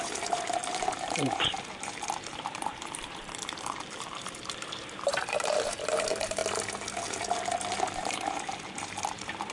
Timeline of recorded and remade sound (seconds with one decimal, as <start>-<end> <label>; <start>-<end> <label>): 0.0-6.4 remade; 6.4-7.8 recorded; 7.8-9.5 remade